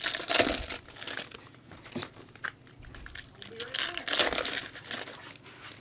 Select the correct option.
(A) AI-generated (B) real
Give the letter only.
B